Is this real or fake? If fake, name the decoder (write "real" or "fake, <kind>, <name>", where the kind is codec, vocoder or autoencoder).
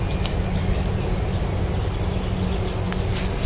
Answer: real